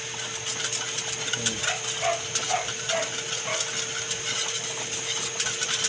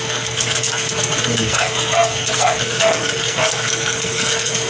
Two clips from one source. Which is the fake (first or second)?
second